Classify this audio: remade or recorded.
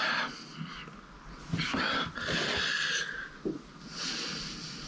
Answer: recorded